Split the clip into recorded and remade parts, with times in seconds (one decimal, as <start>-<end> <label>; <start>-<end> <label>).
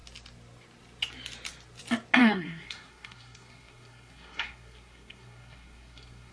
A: 0.0-2.2 recorded; 2.2-6.3 remade